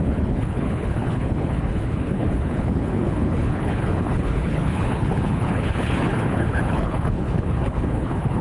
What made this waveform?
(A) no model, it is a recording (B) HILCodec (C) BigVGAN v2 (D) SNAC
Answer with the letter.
B